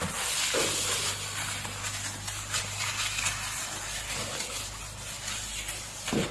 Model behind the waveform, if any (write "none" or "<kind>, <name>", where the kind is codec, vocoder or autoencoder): none